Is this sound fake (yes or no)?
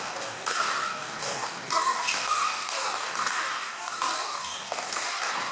yes